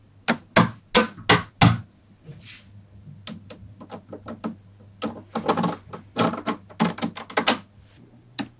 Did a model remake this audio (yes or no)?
no